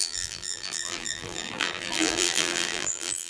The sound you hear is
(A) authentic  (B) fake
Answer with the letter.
B